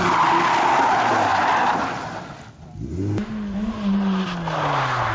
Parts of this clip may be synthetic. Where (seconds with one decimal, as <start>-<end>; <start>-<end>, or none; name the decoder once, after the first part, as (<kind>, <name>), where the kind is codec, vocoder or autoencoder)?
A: none